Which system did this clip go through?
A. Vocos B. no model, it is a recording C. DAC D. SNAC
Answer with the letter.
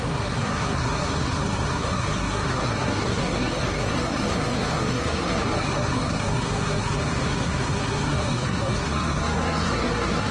D